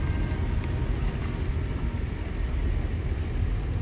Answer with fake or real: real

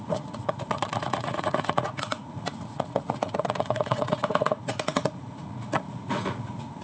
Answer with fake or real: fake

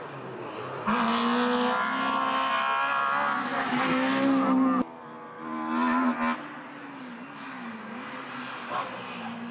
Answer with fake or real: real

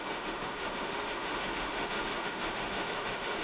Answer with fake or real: fake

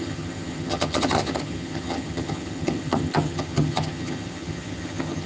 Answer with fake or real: fake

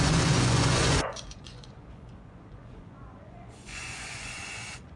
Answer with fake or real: fake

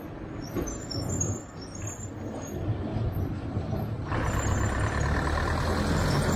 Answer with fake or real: real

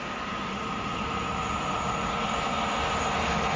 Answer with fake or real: real